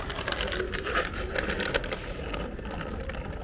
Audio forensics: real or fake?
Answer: real